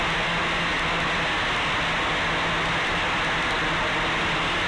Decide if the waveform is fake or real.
real